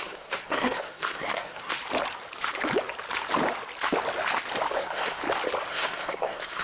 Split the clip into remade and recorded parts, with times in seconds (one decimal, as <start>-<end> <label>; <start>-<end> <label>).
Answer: 0.0-1.7 remade; 1.7-4.7 recorded; 4.7-5.2 remade; 5.2-5.7 recorded; 5.7-6.6 remade